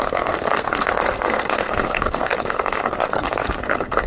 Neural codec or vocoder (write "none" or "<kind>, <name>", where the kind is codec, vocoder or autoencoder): codec, SNAC